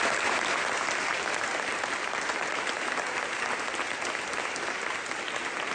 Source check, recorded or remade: recorded